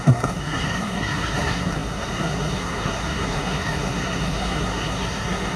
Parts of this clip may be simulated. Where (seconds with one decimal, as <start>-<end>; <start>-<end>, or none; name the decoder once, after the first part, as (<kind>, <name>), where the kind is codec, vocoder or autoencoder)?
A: 0.0-5.6 (codec, SNAC)